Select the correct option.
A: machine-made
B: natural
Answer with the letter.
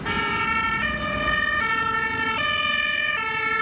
A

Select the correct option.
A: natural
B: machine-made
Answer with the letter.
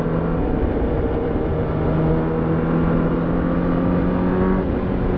A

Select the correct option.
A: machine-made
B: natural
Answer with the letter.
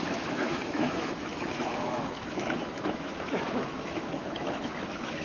A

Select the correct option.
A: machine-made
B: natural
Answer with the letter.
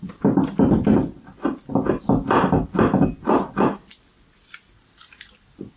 B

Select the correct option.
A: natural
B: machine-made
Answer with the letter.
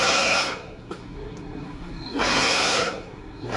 B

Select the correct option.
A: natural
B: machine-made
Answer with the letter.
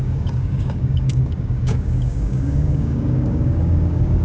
B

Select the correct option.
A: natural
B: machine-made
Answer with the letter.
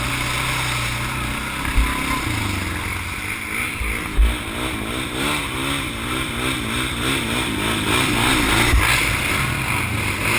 A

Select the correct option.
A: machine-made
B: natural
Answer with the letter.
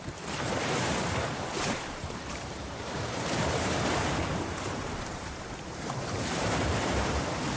A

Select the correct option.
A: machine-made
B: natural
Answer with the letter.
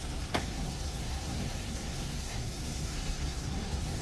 A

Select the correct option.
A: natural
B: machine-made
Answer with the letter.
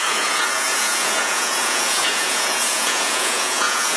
B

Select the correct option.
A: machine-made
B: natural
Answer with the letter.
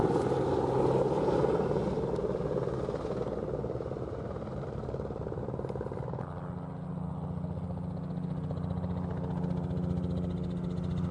B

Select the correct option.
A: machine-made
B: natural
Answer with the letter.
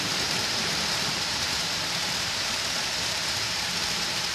A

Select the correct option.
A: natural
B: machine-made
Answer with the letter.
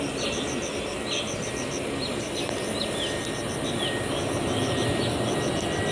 A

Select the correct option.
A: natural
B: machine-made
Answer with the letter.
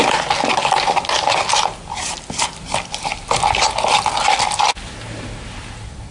A